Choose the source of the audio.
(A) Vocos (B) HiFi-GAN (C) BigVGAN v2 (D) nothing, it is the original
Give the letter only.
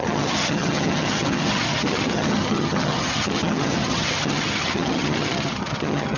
B